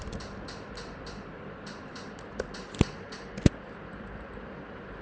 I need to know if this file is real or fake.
fake